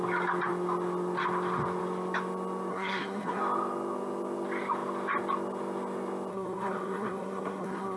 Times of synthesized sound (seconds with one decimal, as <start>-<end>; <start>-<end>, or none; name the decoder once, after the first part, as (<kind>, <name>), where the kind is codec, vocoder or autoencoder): 2.7-3.4 (codec, SNAC); 6.3-8.0